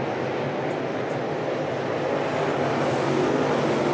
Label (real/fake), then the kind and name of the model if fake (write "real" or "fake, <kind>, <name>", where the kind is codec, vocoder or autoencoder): real